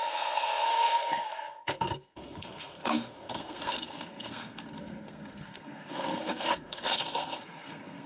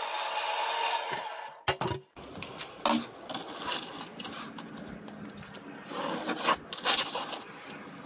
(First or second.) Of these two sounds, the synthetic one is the first